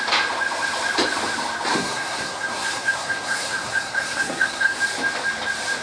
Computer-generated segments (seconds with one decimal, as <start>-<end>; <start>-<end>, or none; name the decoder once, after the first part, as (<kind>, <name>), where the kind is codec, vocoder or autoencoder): 1.7-4.8 (codec, SNAC)

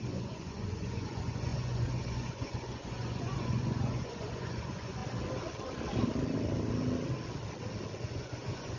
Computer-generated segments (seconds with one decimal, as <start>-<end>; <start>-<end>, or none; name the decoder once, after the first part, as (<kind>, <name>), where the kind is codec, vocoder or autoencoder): 0.0-5.0 (vocoder, Vocos); 8.0-8.8

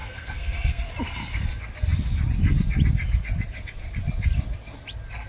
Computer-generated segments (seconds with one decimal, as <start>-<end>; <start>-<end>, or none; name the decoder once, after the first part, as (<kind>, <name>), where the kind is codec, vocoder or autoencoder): 0.0-0.9 (codec, SNAC)

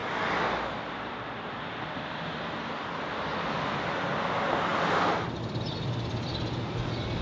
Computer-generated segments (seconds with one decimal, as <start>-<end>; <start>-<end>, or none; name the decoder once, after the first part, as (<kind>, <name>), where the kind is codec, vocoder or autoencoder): 4.7-6.1 (vocoder, BigVGAN v2)

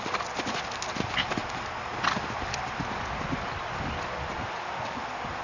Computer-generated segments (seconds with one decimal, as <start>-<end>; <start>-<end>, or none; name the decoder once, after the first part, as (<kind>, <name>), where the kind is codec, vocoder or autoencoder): none

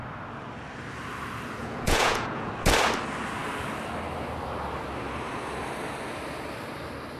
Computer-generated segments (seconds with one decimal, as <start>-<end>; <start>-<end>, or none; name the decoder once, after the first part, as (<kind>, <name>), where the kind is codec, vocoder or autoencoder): 1.6-2.5 (vocoder, Vocos)